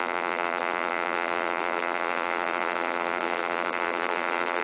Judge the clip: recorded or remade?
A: remade